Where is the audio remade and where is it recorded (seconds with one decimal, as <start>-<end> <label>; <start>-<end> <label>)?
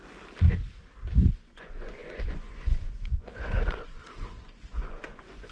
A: 0.0-1.3 recorded; 1.3-5.5 remade